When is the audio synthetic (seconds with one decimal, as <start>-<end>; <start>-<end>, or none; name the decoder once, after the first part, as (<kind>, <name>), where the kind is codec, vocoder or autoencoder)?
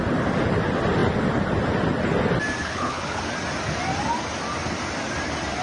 2.6-3.2 (codec, HILCodec)